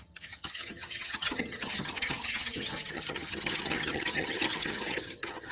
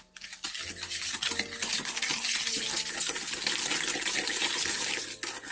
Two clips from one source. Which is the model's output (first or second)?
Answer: first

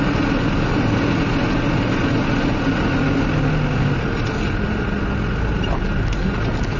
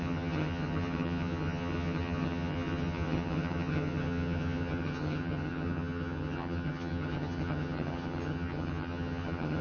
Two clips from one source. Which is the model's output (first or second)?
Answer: second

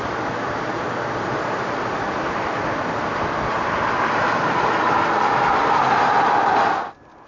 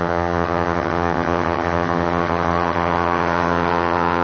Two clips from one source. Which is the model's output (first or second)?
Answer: second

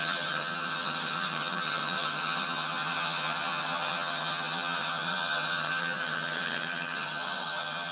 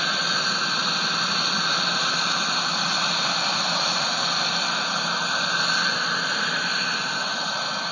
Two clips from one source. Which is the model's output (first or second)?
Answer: first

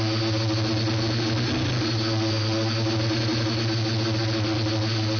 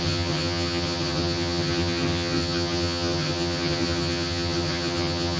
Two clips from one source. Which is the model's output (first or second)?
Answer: second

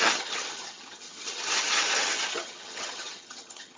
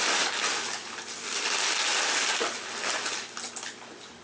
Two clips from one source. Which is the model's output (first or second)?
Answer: first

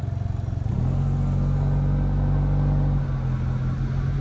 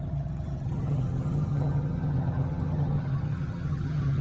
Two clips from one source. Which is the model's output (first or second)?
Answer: second